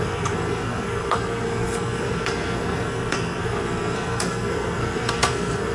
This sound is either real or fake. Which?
fake